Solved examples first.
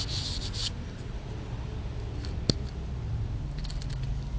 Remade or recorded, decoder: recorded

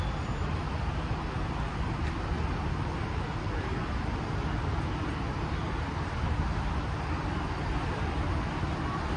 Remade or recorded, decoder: recorded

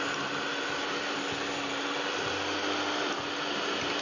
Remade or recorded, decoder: recorded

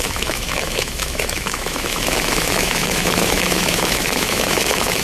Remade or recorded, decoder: remade, autoencoder, DAC-VAE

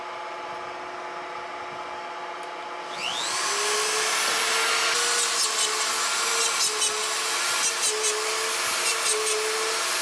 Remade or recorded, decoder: recorded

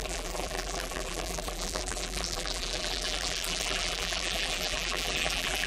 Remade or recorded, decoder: remade, vocoder, BigVGAN v2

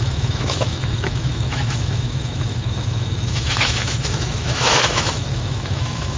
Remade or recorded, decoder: remade, autoencoder, DAC-VAE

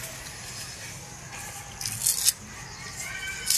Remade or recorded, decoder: recorded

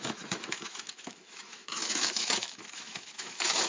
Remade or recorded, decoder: remade, autoencoder, DAC-VAE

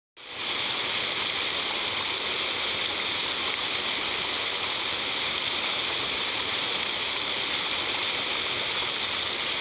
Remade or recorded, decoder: recorded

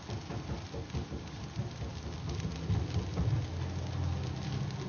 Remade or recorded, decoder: recorded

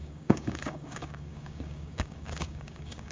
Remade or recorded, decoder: remade, codec, DAC